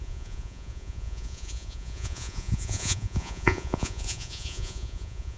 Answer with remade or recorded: remade